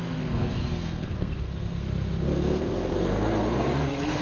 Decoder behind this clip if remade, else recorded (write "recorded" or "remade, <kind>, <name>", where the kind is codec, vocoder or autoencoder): remade, codec, SNAC